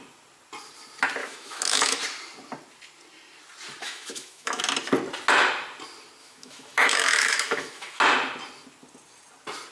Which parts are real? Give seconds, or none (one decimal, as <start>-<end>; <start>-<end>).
0.0-1.2; 2.0-3.8; 4.6-6.2; 8.0-9.7